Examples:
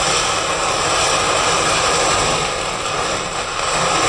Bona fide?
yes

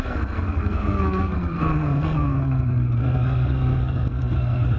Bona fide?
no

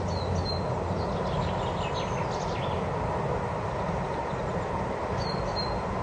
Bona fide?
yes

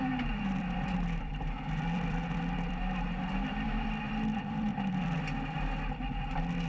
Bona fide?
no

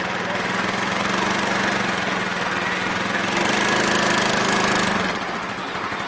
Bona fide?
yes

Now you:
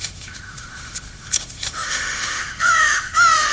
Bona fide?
no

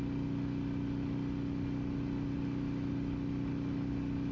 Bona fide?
yes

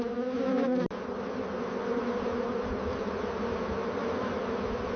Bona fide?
yes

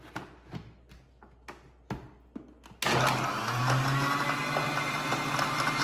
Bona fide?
yes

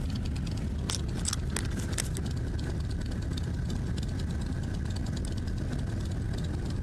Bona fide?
yes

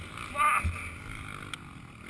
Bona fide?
yes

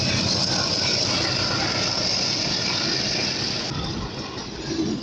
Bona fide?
yes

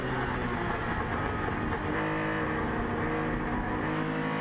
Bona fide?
yes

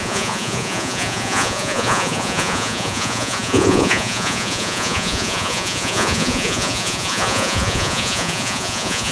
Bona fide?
no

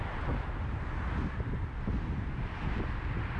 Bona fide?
yes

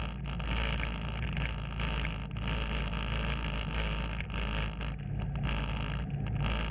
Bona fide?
yes